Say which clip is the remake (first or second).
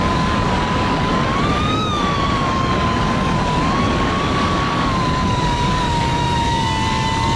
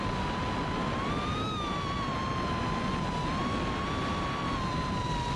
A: first